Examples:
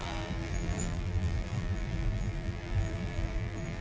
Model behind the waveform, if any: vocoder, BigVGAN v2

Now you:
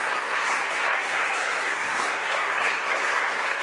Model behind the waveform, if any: codec, SNAC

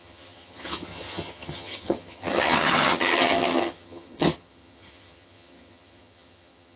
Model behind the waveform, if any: vocoder, HiFi-GAN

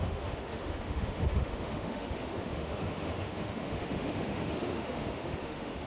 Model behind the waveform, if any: autoencoder, DAC-VAE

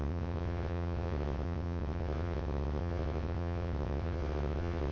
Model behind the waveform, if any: vocoder, WaveNeXt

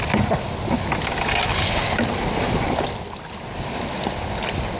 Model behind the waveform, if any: none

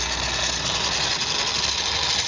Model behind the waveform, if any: none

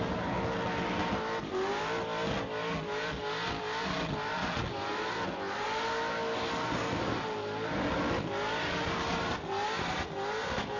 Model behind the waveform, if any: none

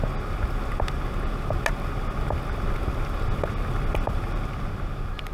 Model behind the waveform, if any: none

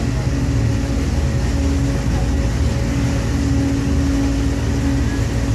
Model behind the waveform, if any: none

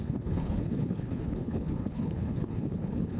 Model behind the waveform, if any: codec, HILCodec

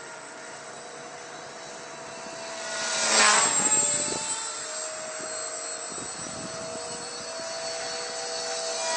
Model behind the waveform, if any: none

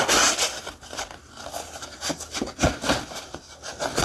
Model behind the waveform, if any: none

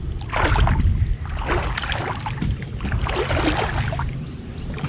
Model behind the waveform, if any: none